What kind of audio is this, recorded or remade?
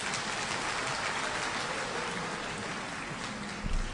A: recorded